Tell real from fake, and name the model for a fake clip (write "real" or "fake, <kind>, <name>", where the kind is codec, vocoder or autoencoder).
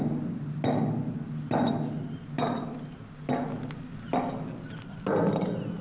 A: real